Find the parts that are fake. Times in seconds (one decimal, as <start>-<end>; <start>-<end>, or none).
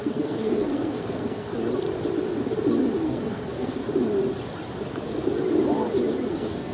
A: 0.0-1.5; 3.0-3.8; 6.3-6.7